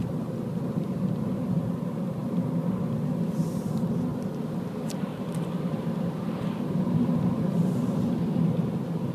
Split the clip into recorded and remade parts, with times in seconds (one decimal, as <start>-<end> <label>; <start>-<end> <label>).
0.0-9.1 recorded